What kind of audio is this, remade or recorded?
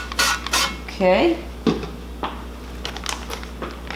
recorded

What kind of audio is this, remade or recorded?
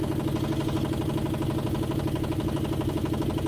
recorded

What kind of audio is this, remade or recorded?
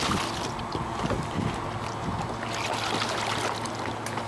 recorded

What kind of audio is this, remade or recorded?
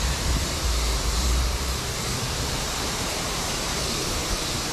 remade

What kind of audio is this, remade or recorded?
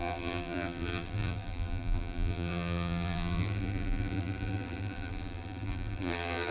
remade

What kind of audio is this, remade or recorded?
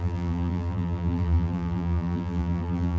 remade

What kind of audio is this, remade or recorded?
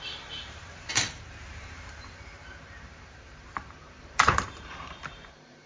remade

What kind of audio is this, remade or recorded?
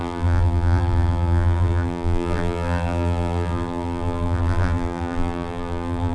remade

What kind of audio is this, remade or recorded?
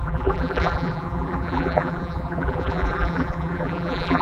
remade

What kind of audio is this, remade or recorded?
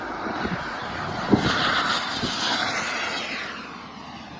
recorded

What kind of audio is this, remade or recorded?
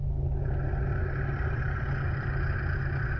recorded